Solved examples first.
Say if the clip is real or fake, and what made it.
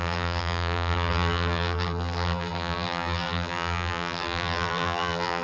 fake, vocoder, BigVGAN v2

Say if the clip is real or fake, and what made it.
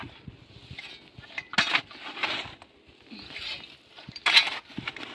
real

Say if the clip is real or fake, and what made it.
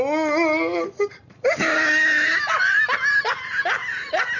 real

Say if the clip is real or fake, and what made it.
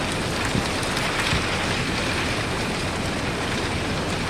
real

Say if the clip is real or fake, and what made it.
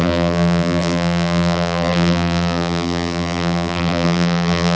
fake, vocoder, BigVGAN v2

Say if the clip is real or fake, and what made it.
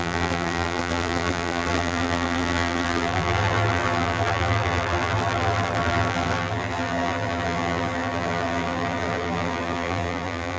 fake, vocoder, BigVGAN v2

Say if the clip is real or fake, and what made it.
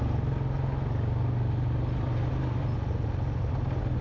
real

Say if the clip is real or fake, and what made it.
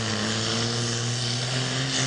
real